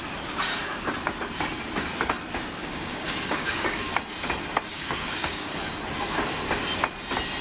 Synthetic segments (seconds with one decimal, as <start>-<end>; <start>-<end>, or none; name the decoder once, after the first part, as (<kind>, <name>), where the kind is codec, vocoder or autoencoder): 2.6-3.9 (codec, DAC); 4.7-5.5